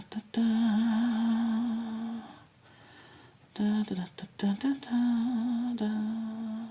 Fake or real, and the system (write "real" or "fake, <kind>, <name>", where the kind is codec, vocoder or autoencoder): real